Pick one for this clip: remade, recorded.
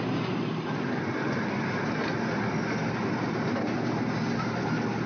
recorded